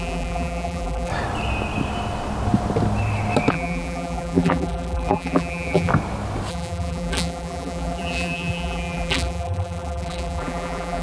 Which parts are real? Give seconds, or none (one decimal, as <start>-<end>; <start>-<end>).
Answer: 1.1-3.5; 5.9-6.5